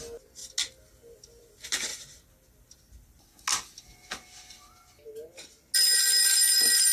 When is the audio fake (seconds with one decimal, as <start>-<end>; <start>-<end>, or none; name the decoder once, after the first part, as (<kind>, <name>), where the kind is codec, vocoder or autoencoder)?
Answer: none